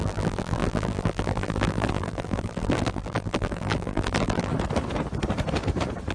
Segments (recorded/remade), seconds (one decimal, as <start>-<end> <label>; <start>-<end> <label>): 0.0-4.5 remade; 4.5-6.1 recorded